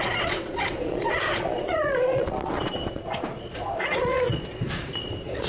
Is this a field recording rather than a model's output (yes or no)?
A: no